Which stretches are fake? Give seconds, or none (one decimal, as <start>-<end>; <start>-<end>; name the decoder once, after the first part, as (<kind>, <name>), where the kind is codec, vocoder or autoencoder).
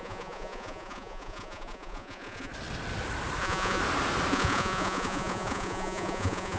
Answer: 0.0-2.5 (vocoder, Vocos); 3.4-3.8; 4.3-6.6